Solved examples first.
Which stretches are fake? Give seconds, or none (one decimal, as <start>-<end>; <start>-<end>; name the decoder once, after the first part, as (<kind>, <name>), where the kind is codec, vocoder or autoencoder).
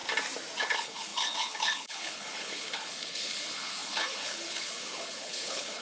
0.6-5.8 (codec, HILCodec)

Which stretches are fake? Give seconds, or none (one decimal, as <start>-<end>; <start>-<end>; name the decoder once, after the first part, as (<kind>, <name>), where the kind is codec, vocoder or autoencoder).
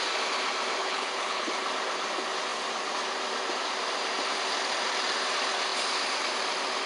0.8-1.5 (codec, HILCodec)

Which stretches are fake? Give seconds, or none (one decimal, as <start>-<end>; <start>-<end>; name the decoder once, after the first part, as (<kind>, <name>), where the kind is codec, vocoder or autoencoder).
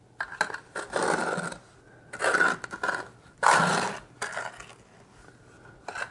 none